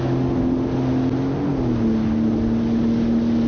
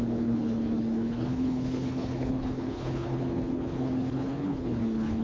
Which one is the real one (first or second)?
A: first